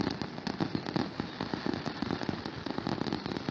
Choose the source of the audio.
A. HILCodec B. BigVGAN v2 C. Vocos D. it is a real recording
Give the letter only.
D